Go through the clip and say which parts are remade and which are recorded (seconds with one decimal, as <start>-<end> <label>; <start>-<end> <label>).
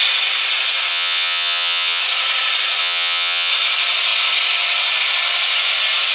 0.0-0.9 recorded; 0.9-2.0 remade; 2.0-2.8 recorded; 2.8-3.5 remade; 3.5-6.1 recorded